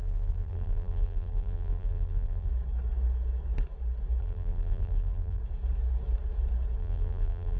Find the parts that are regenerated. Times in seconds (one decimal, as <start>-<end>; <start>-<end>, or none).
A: 0.0-2.5; 4.2-5.4; 6.8-7.6